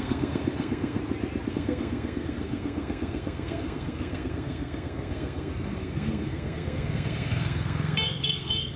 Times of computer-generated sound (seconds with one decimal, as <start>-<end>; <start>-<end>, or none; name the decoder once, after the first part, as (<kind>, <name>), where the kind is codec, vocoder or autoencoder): 0.0-1.0 (codec, SNAC); 1.5-8.8